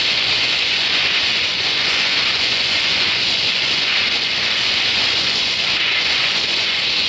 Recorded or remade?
remade